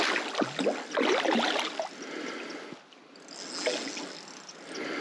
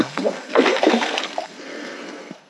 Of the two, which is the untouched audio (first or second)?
first